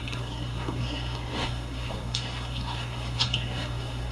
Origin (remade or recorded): remade